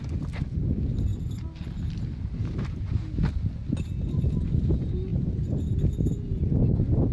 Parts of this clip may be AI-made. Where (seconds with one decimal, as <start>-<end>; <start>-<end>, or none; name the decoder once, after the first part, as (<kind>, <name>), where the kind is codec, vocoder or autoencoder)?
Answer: none